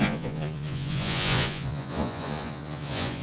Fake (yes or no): yes